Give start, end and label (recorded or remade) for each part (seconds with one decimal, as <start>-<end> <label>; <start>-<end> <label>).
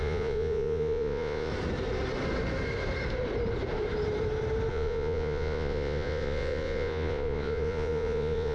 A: 0.0-1.5 remade; 1.5-4.7 recorded; 4.7-8.5 remade